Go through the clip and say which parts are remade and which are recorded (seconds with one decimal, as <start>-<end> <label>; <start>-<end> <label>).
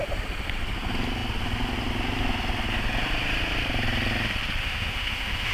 0.0-4.6 recorded; 4.6-5.5 remade